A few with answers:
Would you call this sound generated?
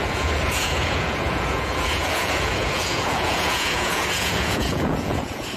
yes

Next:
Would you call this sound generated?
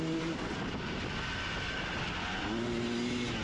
no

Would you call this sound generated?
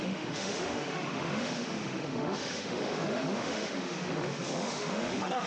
yes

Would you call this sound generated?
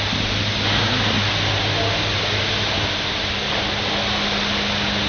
no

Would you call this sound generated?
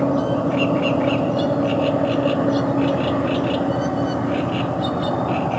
no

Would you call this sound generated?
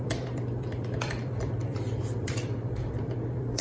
yes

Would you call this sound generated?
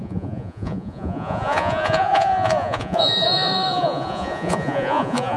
yes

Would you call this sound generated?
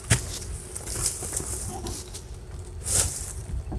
no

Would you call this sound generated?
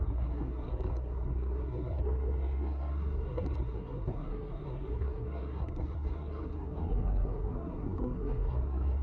yes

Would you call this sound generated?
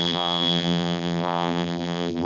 yes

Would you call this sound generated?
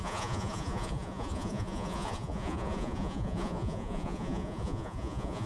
yes